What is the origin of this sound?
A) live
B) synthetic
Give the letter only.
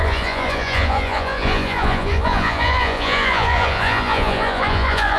B